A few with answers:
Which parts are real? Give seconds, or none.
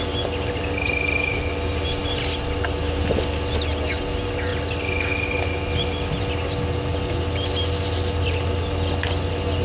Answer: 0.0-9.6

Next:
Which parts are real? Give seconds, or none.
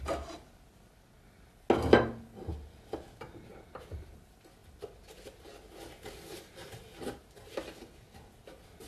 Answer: 0.0-8.9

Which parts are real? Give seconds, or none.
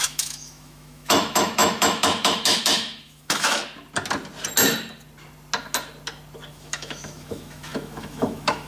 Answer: 3.6-6.5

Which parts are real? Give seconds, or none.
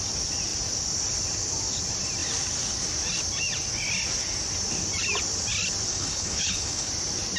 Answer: 0.0-5.9; 6.9-7.4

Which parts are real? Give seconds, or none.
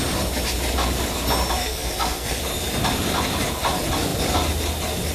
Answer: 0.0-1.6; 2.4-5.1